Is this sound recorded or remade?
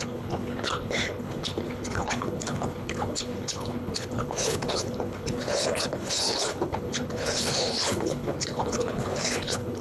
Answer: remade